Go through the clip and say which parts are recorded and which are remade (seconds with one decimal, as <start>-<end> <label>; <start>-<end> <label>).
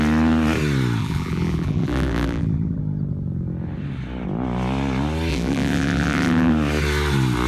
0.0-1.0 recorded; 1.0-2.8 remade; 2.8-5.3 recorded; 5.3-6.5 remade; 6.5-7.5 recorded